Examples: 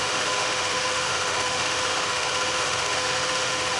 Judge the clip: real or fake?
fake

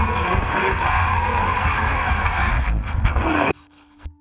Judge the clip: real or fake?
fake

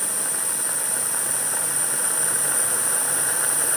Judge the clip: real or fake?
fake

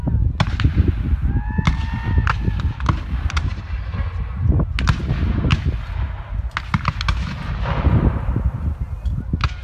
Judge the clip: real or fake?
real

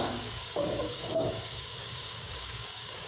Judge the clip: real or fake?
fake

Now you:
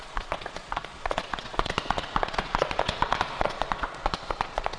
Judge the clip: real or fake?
fake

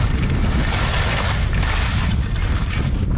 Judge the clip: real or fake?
real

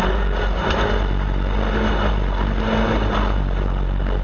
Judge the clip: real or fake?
real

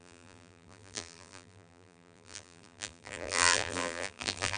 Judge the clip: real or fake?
fake